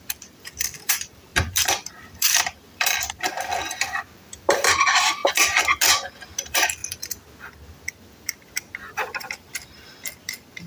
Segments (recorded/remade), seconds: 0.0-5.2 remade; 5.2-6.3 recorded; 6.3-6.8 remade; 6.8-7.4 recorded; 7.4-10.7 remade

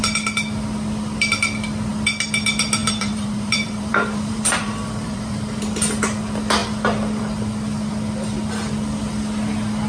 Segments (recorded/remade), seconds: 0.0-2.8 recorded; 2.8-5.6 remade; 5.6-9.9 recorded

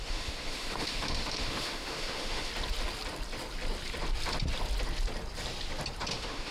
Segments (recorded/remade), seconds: 0.0-2.5 remade; 2.5-6.1 recorded; 6.1-6.5 remade

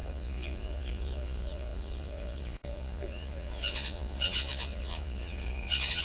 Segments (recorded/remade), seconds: 0.0-6.0 remade

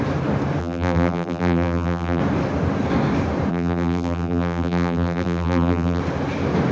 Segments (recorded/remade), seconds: 0.0-0.6 recorded; 0.6-2.2 remade; 2.2-3.5 recorded; 3.5-6.0 remade; 6.0-6.7 recorded

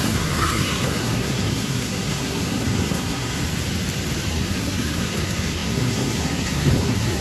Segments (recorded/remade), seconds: 0.0-3.4 remade; 3.4-4.3 recorded; 4.3-7.2 remade